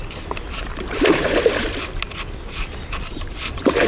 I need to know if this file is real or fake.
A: fake